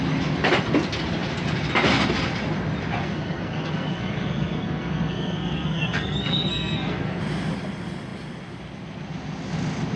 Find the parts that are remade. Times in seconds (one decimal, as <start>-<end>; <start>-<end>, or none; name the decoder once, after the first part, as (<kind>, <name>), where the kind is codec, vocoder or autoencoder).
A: 3.0-7.2 (codec, SNAC)